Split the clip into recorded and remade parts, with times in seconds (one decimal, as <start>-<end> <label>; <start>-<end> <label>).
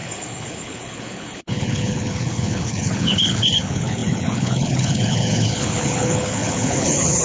0.0-7.2 remade